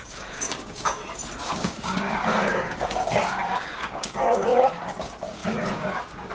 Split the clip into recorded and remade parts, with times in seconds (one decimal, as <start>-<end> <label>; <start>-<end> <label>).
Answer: 0.0-1.0 remade; 1.0-1.5 recorded; 1.5-6.3 remade